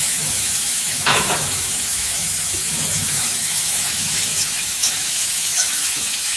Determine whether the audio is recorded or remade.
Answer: remade